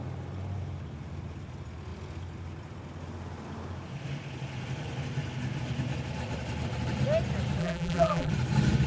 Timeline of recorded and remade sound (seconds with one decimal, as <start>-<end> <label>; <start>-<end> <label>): 0.0-7.6 recorded; 7.6-8.3 remade; 8.3-8.9 recorded